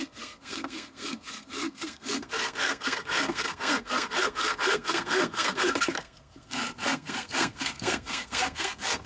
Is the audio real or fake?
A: fake